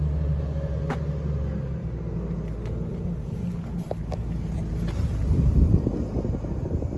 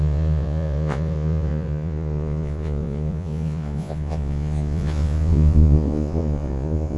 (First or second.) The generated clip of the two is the second